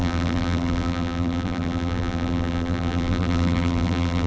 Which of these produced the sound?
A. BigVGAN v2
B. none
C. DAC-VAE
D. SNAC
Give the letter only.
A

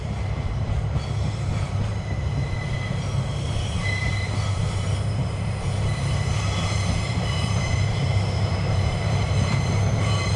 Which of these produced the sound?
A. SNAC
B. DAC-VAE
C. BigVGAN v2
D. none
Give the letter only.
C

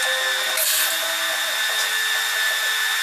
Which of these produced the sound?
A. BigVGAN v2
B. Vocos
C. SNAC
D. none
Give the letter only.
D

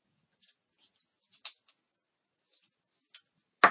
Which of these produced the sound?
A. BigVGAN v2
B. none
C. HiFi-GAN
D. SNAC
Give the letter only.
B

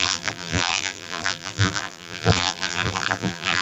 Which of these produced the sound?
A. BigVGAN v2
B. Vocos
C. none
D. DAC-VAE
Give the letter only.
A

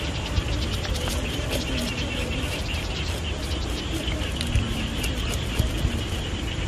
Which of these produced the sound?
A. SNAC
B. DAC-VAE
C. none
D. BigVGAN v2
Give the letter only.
C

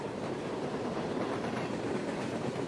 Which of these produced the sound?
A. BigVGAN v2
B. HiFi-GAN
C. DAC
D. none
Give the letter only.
A